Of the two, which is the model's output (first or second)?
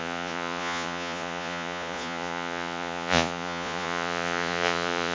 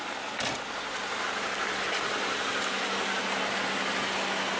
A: first